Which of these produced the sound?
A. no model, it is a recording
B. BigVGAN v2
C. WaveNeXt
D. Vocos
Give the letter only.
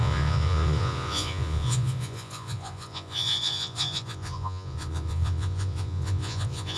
D